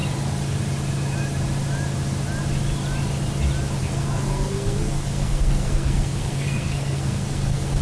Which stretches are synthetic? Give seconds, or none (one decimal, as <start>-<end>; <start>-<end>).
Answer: 3.8-7.8